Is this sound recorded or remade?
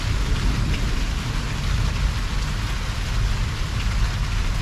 recorded